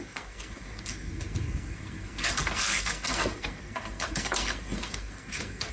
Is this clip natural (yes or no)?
no